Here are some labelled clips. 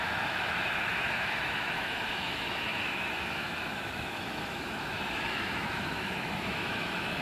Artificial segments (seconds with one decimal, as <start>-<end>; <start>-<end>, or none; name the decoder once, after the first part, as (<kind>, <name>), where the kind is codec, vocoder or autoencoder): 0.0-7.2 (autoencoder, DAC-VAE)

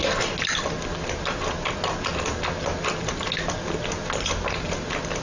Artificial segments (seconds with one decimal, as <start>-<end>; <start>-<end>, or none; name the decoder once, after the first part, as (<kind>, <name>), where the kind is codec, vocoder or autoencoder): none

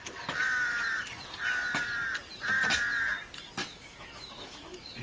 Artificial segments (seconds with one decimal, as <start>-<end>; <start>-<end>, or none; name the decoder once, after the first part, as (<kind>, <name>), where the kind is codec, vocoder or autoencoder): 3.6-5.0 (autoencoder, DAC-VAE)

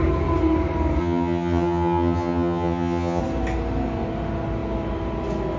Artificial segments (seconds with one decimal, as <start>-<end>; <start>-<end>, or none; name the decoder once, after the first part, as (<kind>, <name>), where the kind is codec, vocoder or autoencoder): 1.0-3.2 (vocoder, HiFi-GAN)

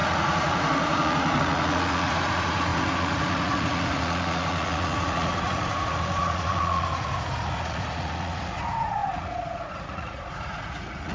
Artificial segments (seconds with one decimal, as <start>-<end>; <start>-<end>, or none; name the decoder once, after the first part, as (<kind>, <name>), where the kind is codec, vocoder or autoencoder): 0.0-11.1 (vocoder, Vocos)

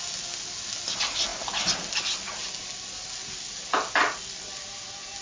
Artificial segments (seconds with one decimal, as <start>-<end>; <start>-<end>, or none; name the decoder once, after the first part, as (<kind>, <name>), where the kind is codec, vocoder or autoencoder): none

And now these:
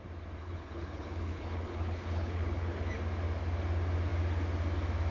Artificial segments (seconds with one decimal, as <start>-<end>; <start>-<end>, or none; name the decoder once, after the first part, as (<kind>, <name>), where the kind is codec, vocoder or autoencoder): 0.4-2.9 (codec, HILCodec)